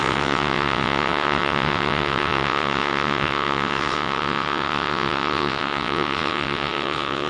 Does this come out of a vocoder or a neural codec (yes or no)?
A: yes